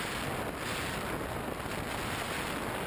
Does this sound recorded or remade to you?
recorded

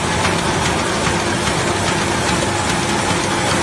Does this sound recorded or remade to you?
recorded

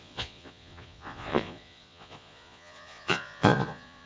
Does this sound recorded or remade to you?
remade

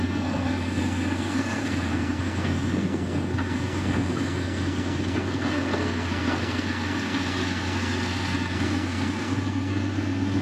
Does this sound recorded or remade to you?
remade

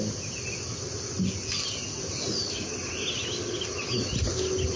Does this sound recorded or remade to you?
recorded